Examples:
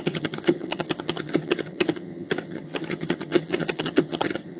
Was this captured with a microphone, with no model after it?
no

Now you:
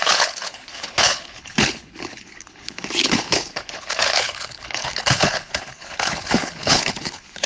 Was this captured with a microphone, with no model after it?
no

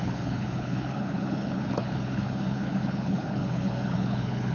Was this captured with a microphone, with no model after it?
no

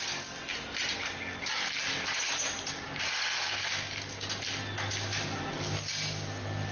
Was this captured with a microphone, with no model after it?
yes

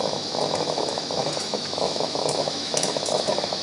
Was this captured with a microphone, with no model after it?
no